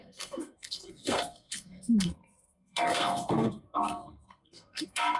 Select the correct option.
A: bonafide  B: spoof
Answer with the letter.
B